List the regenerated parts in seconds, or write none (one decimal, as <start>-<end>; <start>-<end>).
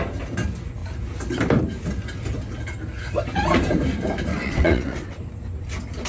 4.3-5.2